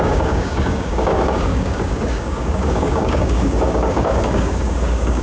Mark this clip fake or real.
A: fake